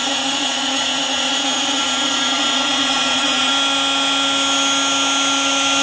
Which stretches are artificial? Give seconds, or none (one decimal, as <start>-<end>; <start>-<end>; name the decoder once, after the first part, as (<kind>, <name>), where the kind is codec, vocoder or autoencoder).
0.0-3.5 (vocoder, Vocos)